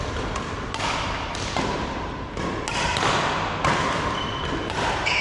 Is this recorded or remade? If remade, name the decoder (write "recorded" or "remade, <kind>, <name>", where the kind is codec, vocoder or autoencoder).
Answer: recorded